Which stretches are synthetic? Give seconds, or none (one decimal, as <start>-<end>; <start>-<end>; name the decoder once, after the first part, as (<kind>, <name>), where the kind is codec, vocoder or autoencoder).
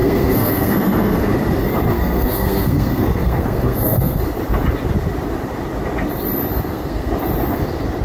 0.0-1.3 (codec, SNAC); 1.9-4.2; 6.7-7.2